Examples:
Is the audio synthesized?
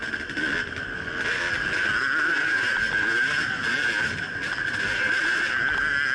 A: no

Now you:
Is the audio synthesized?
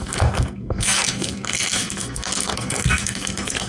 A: yes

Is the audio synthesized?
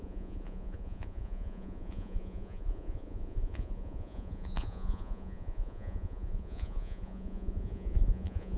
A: yes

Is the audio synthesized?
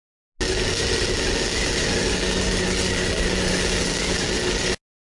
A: no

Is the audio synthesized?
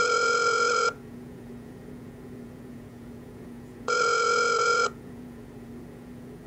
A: yes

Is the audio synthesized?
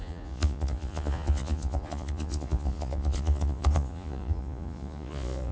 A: yes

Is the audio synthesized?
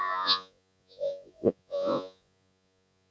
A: yes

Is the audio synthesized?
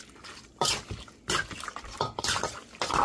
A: no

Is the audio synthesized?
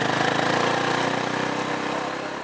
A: no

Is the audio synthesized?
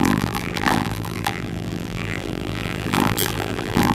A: yes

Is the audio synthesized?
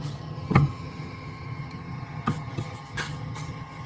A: yes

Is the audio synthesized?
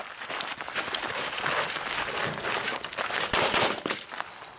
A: no